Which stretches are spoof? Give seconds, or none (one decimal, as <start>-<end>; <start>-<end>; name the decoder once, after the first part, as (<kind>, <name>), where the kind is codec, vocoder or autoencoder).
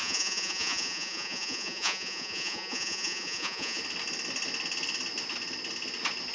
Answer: 0.0-3.8 (vocoder, Vocos)